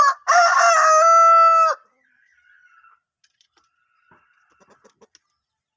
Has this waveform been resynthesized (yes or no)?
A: no